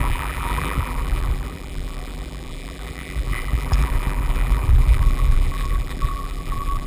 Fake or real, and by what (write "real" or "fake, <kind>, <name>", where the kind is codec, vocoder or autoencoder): fake, vocoder, BigVGAN v2